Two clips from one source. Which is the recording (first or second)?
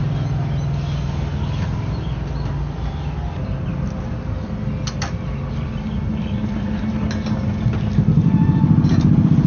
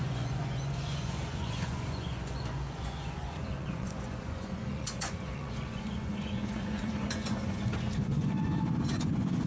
first